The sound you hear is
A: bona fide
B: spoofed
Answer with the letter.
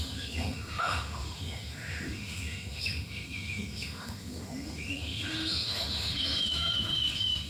B